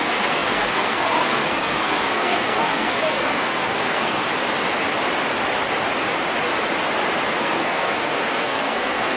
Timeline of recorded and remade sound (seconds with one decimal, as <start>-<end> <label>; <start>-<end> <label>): 0.0-4.2 remade; 4.2-7.4 recorded; 7.4-9.2 remade